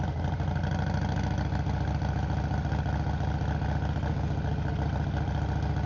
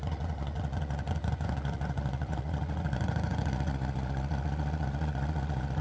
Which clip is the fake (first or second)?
second